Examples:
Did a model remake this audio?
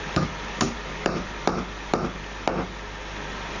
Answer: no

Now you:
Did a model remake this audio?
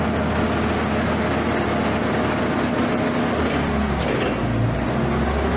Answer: no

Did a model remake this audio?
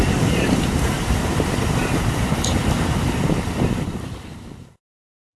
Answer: yes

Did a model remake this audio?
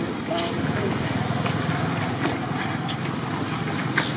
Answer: no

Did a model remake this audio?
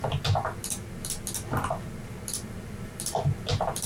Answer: no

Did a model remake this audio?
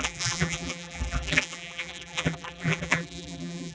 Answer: yes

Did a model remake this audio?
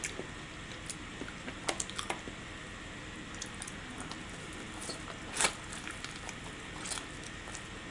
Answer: no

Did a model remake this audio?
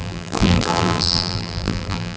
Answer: yes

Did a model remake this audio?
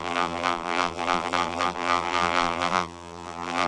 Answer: yes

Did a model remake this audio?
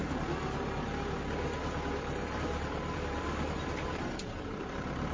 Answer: yes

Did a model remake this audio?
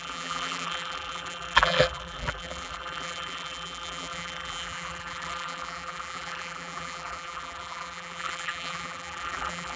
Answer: yes